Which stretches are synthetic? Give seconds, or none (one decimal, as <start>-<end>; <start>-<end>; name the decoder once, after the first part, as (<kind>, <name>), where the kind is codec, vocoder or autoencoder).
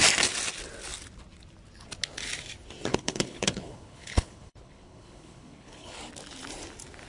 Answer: 2.9-6.0 (codec, HILCodec)